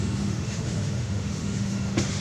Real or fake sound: fake